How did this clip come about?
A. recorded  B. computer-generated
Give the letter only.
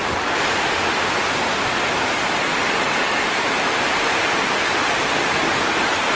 B